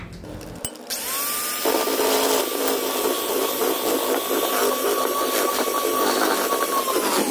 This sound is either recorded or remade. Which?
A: recorded